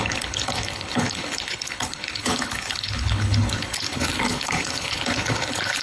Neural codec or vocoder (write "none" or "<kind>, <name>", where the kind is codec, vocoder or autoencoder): codec, HILCodec